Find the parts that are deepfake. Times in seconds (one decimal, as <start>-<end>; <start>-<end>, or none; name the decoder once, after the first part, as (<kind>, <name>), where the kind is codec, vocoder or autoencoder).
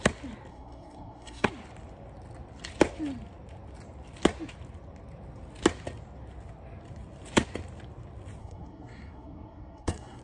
0.5-1.5 (codec, SNAC); 8.4-10.2